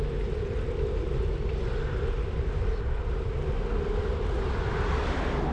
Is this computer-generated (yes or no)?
no